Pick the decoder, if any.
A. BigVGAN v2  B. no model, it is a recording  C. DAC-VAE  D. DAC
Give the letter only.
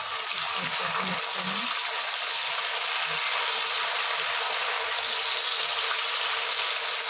B